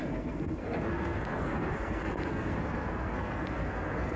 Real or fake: fake